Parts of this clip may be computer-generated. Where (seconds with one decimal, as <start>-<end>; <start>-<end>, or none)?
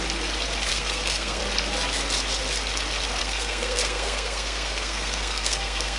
0.7-1.4; 3.2-6.0